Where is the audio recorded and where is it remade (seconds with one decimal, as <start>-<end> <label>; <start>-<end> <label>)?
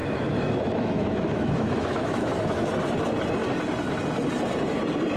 0.0-2.7 remade; 2.7-5.2 recorded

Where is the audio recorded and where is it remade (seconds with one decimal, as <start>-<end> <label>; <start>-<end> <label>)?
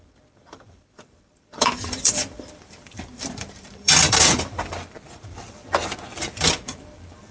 0.0-5.6 remade; 5.6-6.1 recorded; 6.1-7.3 remade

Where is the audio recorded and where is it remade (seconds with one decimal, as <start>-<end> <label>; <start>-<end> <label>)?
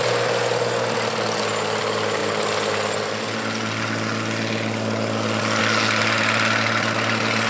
0.0-7.5 recorded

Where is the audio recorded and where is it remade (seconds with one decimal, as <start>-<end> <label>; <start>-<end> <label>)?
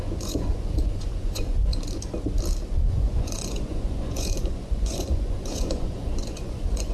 0.0-1.7 remade; 1.7-2.9 recorded; 2.9-6.9 remade